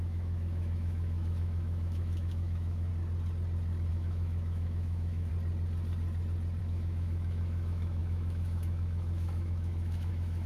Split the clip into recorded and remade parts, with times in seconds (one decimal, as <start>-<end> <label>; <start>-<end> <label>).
0.0-2.9 remade; 2.9-3.9 recorded; 3.9-5.3 remade; 5.3-6.6 recorded; 6.6-10.5 remade